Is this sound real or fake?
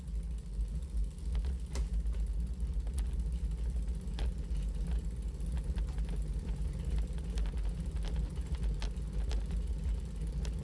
real